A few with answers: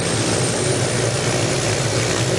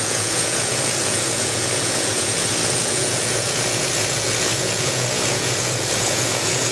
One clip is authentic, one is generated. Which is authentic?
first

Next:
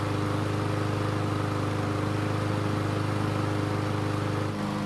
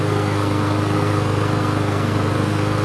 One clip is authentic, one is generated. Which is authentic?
first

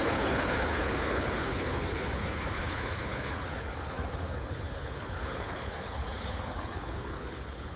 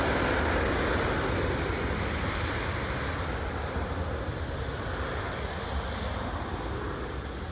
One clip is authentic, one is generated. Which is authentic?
second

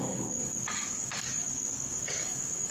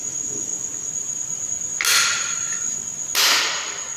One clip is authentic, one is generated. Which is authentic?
second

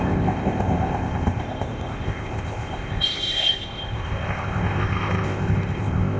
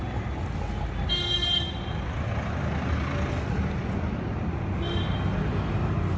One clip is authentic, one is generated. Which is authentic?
second